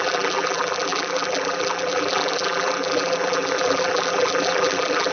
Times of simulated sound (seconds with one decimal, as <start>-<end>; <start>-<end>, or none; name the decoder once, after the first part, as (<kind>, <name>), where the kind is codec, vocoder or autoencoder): 0.0-5.1 (vocoder, BigVGAN v2)

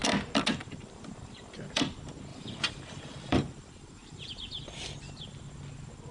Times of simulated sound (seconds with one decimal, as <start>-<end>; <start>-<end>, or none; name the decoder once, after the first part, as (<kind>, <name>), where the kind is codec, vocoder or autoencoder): 0.6-1.9 (vocoder, BigVGAN v2); 2.3-4.3

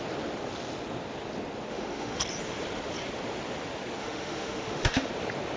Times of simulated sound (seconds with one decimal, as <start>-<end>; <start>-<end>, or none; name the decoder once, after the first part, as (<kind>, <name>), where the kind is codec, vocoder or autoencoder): 1.7-2.2 (autoencoder, DAC-VAE); 4.0-5.1

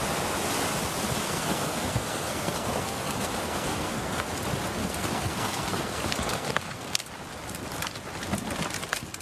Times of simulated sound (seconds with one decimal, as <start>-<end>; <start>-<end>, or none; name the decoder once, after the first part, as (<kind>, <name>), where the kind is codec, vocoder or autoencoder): 1.2-4.3 (codec, SNAC); 4.8-7.1

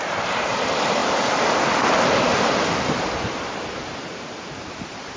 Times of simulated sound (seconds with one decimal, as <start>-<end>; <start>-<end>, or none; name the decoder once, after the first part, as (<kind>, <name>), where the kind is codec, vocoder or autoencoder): 0.0-5.2 (vocoder, BigVGAN v2)

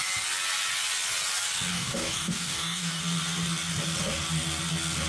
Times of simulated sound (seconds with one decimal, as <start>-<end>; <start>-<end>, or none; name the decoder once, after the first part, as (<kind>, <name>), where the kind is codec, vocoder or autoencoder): 1.7-3.0 (codec, DAC)